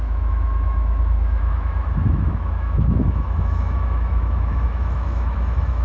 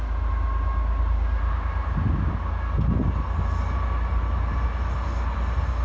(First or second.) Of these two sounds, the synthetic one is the first